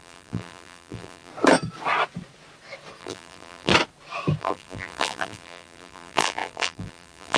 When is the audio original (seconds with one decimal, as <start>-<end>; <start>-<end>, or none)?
1.3-3.0; 3.7-4.4